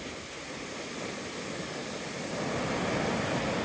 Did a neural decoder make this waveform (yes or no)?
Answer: no